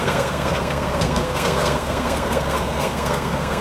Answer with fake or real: fake